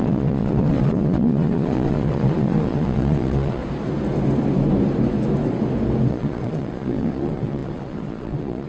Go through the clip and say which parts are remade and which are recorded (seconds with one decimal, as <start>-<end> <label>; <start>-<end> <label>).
0.0-3.6 remade; 3.6-6.1 recorded; 6.1-8.7 remade

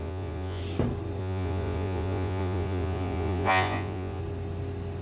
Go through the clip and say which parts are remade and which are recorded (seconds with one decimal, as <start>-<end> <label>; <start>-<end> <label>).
0.0-0.6 remade; 0.6-1.2 recorded; 1.2-4.2 remade; 4.2-5.0 recorded

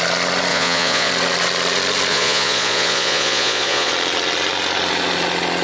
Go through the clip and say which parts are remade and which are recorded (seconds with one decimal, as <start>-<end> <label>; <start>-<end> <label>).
0.0-0.5 recorded; 0.5-1.1 remade; 1.1-2.1 recorded; 2.1-3.9 remade; 3.9-5.6 recorded

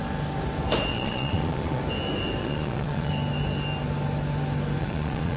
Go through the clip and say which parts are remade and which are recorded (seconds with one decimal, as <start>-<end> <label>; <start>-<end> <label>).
0.0-0.9 recorded; 0.9-1.8 remade; 1.8-2.4 recorded; 2.4-3.1 remade; 3.1-4.8 recorded; 4.8-5.4 remade

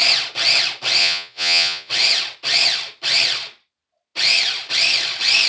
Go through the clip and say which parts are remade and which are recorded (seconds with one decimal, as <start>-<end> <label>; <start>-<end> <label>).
0.0-1.0 recorded; 1.0-1.9 remade; 1.9-5.5 recorded